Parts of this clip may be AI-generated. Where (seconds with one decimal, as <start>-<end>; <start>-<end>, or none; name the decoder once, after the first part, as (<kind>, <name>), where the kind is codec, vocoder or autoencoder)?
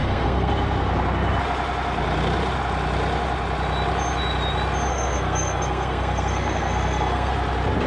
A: 0.0-0.5 (codec, SNAC); 4.9-7.3